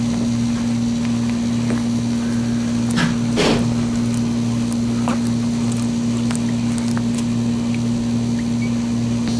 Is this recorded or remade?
recorded